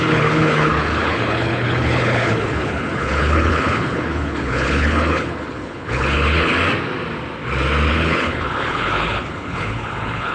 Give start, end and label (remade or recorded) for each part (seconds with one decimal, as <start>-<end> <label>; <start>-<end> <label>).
0.0-6.5 remade; 6.5-7.9 recorded; 7.9-10.3 remade